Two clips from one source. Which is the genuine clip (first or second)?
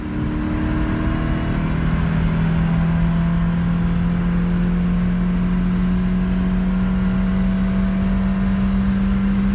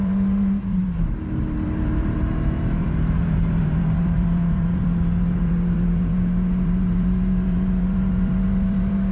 first